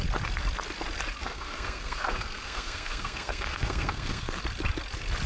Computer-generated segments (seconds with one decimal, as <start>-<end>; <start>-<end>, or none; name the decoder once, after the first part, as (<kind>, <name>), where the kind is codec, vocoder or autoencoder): 1.2-4.4 (codec, SNAC)